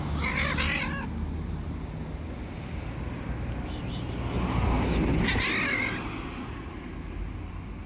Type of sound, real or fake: real